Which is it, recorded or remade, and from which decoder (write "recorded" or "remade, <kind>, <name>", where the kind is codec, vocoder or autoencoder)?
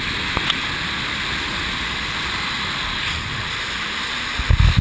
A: recorded